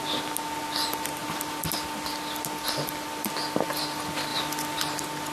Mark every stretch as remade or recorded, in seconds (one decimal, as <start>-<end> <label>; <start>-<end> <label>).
0.0-5.3 recorded

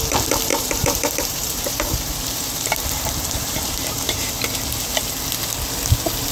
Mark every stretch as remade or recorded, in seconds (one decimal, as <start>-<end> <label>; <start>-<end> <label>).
0.0-0.5 recorded; 0.5-4.3 remade; 4.3-6.3 recorded

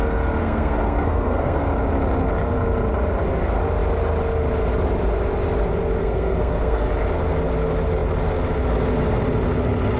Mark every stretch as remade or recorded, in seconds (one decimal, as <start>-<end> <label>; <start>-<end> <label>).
0.0-0.4 recorded; 0.4-1.6 remade; 1.6-6.0 recorded; 6.0-6.9 remade; 6.9-10.0 recorded

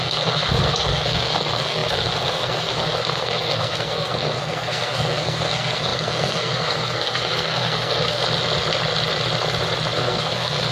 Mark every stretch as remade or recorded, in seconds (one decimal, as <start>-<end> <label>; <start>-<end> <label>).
0.0-8.2 remade; 8.2-10.0 recorded; 10.0-10.7 remade